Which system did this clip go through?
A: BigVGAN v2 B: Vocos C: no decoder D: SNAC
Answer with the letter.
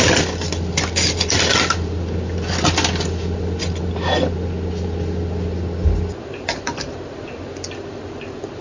C